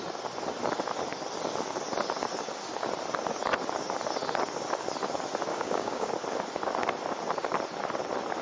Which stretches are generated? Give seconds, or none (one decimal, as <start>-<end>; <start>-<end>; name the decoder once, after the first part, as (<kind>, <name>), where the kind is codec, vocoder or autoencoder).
5.5-6.1 (codec, DAC)